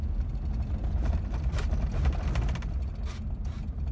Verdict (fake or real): real